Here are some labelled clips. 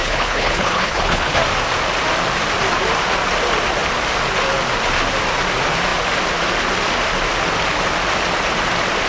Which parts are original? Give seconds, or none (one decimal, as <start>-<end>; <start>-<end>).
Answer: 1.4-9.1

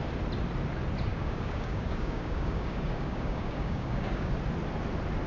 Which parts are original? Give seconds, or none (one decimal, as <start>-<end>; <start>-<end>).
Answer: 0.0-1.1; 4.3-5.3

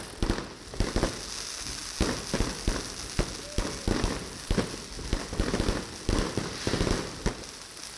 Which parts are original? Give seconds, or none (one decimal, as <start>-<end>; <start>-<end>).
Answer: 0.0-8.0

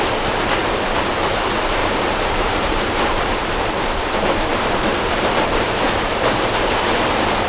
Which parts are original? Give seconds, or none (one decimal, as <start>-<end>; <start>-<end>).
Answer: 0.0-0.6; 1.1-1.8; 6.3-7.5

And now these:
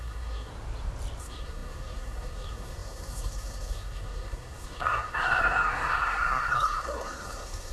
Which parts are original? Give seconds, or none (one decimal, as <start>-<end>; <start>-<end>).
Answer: 0.5-1.2

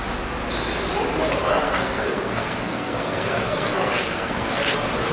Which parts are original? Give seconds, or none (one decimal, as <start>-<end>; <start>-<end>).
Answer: 0.0-1.4; 4.5-5.1